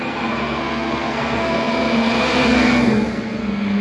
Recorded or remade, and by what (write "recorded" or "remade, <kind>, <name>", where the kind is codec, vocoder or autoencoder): remade, codec, SNAC